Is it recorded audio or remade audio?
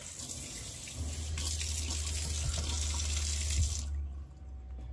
recorded